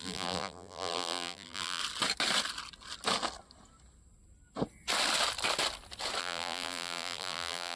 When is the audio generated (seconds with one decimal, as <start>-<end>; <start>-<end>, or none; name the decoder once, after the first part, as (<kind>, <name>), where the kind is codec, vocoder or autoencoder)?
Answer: 0.0-1.8 (vocoder, BigVGAN v2); 6.2-7.8